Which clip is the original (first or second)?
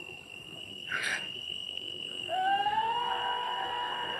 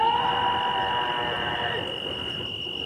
second